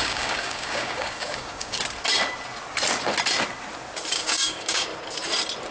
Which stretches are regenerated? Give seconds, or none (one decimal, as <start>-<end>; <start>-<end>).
0.0-1.8; 4.1-4.9